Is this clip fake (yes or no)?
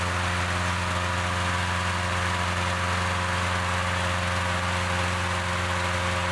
no